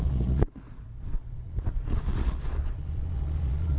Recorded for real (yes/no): no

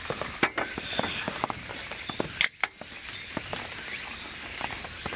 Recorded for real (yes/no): yes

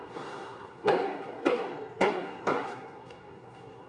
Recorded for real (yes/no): no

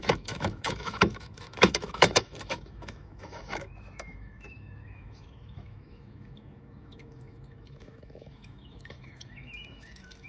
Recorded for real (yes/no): no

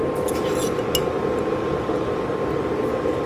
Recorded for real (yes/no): yes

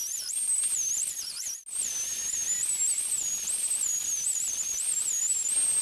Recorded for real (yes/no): yes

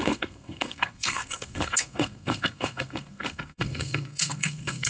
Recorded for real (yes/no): no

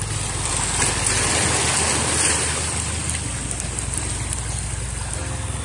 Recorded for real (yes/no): yes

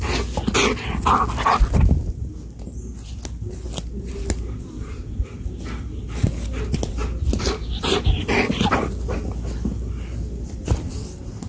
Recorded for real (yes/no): yes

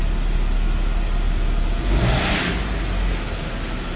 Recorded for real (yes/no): yes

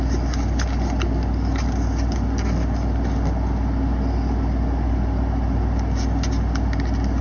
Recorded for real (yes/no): yes